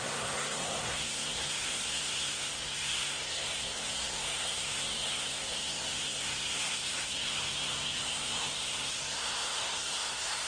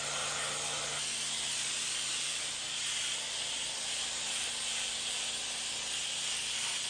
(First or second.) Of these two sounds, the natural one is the second